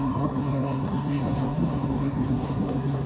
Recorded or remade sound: remade